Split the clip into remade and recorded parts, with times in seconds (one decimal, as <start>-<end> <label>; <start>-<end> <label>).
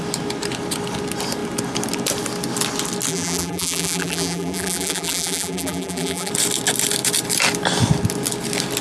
0.0-3.1 recorded; 3.1-6.3 remade; 6.3-8.8 recorded